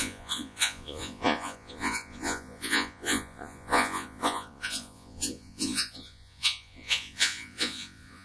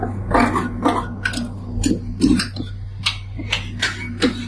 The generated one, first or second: first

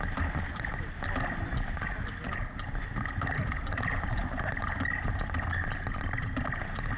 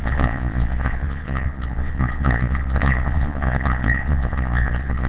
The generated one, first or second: second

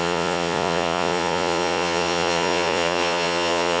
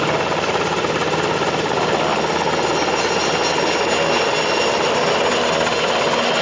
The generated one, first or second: first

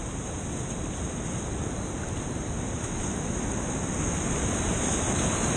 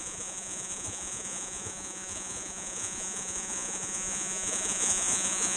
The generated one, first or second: second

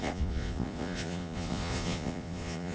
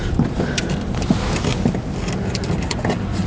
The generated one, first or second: first